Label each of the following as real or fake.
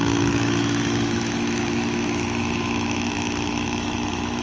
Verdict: fake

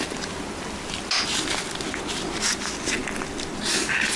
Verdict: real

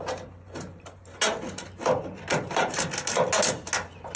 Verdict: real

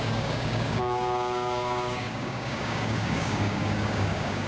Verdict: fake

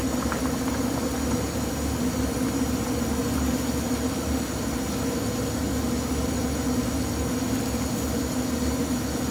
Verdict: real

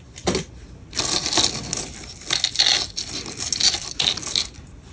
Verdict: real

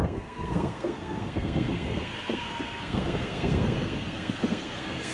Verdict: fake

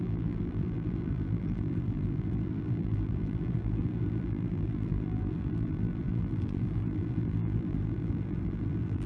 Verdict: fake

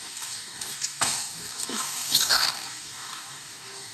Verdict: fake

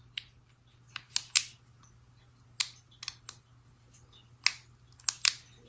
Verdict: real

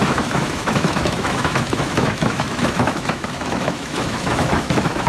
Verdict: fake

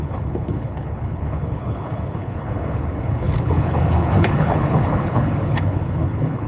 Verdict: fake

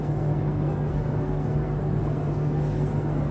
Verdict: fake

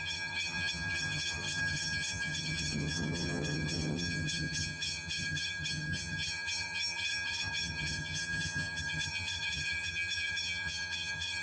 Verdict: fake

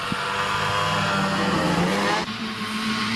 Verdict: real